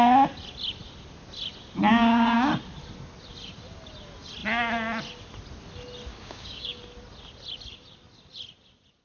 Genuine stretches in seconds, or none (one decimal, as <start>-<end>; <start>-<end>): 0.0-1.9; 2.5-6.1; 6.8-9.0